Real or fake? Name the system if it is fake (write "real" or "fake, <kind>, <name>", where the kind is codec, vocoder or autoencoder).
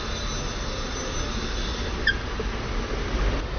real